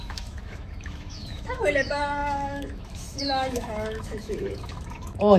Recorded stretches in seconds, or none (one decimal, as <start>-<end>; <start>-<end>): none